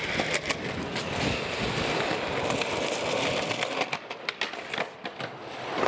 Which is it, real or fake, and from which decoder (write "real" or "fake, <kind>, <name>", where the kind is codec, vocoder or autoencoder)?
real